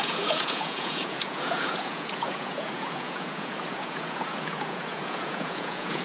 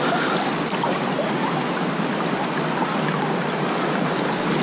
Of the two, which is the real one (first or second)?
second